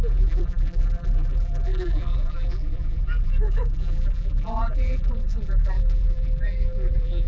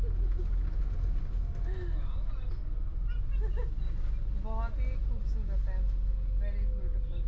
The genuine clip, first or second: second